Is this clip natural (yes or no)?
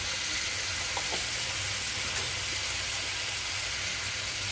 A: yes